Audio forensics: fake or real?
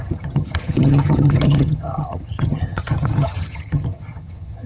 fake